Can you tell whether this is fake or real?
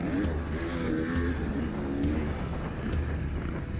real